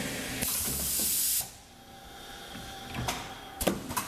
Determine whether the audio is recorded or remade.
recorded